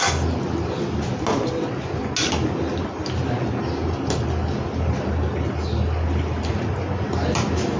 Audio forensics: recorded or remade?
recorded